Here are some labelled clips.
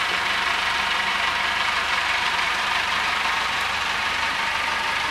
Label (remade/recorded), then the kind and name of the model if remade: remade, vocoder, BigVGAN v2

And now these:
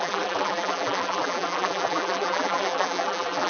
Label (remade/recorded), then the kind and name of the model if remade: remade, vocoder, BigVGAN v2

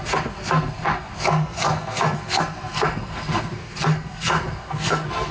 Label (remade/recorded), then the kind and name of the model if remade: remade, codec, SNAC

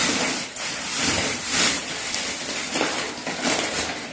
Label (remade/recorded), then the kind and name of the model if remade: remade, vocoder, BigVGAN v2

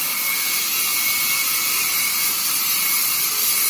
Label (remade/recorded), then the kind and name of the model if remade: recorded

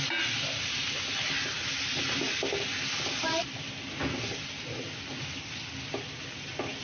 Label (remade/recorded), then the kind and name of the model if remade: recorded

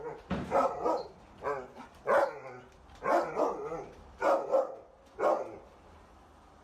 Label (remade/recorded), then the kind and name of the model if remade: recorded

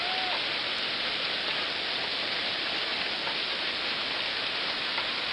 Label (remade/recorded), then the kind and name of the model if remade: recorded